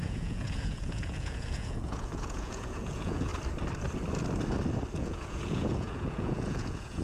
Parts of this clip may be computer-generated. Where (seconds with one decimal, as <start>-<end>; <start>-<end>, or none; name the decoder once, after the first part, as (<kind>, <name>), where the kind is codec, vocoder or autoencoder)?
0.0-3.3 (vocoder, Vocos); 5.0-7.0